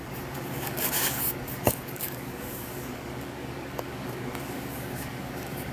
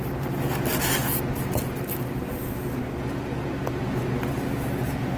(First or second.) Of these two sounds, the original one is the second